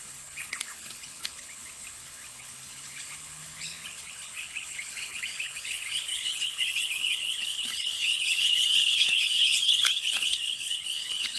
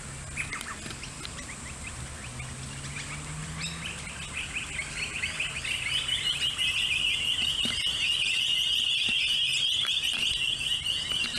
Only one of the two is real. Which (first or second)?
second